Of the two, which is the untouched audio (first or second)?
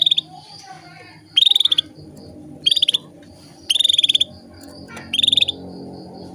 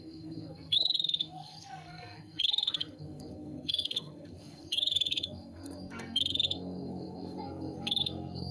first